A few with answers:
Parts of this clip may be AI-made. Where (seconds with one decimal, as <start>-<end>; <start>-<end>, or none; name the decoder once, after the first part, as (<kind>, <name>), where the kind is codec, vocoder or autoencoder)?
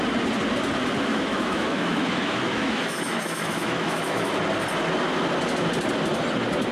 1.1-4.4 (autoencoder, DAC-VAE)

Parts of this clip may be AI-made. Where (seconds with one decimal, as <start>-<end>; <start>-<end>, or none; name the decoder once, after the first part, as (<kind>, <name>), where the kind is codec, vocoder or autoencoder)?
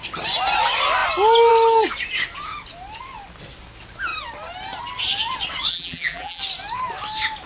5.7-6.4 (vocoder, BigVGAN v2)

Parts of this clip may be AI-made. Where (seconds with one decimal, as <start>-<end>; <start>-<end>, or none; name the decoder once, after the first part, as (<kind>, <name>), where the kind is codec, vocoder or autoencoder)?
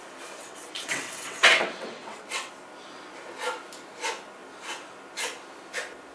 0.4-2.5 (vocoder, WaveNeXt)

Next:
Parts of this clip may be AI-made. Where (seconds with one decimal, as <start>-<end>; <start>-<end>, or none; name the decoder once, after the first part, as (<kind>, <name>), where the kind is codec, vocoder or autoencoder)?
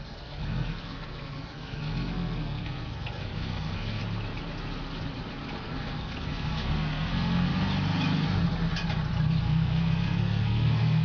0.0-4.0 (codec, SNAC); 5.6-7.5; 9.4-11.0